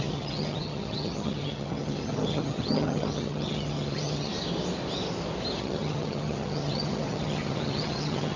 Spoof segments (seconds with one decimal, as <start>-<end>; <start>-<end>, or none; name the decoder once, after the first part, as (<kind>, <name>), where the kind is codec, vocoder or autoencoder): 0.0-4.3 (vocoder, HiFi-GAN); 5.6-8.4